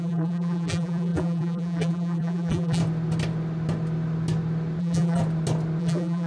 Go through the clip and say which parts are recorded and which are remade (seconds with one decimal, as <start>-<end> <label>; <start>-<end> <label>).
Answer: 0.0-2.8 remade; 2.8-4.8 recorded; 4.8-5.2 remade; 5.2-5.8 recorded; 5.8-6.3 remade